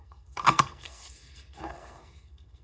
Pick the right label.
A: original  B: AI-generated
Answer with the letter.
B